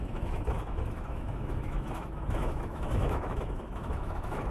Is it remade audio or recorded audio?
remade